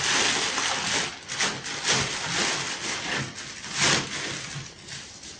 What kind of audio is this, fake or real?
real